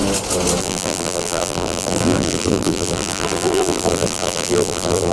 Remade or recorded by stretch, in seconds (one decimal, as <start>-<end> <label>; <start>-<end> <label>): 0.0-0.6 recorded; 0.6-5.1 remade